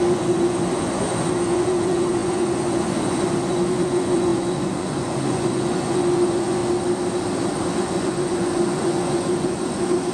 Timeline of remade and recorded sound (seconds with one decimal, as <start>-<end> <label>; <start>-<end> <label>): 0.0-6.6 remade; 6.6-7.7 recorded; 7.7-10.1 remade